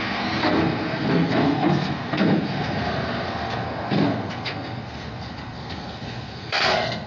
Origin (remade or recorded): remade